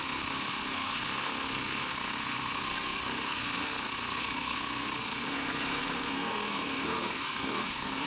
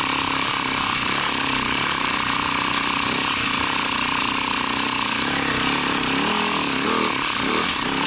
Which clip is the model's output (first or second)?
first